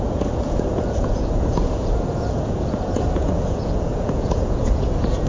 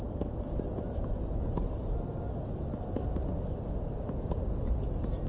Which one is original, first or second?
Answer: second